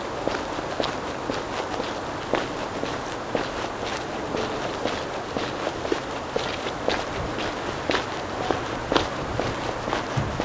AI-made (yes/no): no